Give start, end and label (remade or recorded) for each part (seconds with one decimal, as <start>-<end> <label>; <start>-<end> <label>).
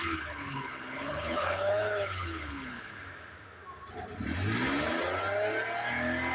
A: 0.0-3.0 remade; 3.0-6.3 recorded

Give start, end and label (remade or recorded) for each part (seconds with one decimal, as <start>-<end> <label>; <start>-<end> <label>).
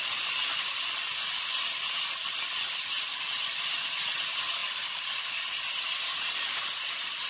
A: 0.0-7.3 recorded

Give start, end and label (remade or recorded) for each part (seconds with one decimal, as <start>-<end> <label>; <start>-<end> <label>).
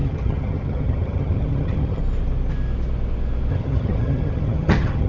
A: 0.0-2.0 remade; 2.0-3.5 recorded; 3.5-5.1 remade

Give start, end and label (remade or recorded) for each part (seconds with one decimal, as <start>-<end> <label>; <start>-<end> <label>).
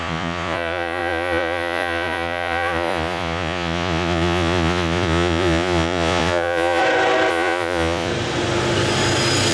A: 0.0-6.8 remade; 6.8-7.3 recorded; 7.3-8.1 remade; 8.1-9.5 recorded